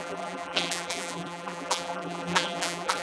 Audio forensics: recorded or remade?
remade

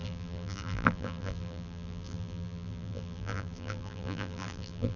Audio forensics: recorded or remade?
remade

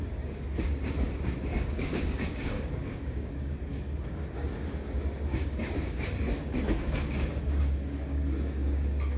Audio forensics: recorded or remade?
remade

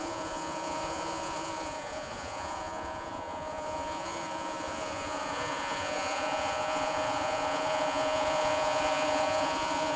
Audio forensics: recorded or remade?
remade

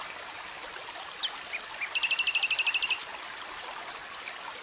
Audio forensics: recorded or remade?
recorded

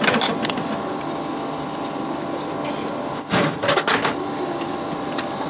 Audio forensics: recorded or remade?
recorded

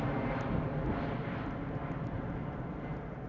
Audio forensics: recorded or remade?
recorded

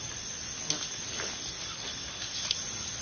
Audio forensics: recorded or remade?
recorded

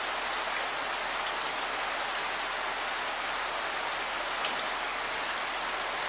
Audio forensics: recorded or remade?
recorded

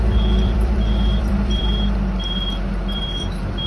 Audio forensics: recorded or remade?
remade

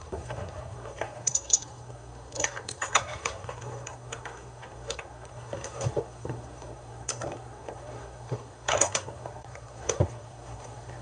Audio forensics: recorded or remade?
remade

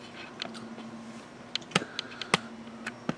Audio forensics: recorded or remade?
recorded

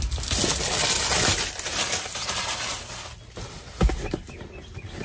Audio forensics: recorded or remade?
recorded